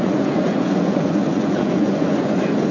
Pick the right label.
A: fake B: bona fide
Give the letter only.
A